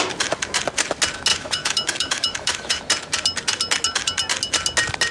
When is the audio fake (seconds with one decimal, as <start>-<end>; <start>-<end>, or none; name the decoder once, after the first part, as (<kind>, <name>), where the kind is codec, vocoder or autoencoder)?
1.3-2.8 (autoencoder, DAC-VAE)